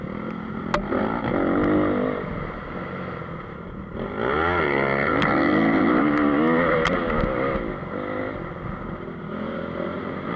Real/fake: real